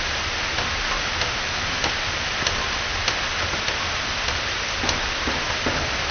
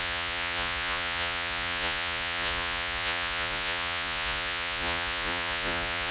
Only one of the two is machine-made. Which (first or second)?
second